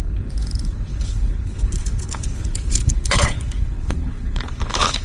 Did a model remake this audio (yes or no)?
yes